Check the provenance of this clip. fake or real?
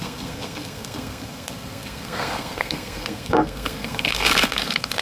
fake